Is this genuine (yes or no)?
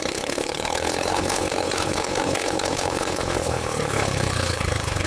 no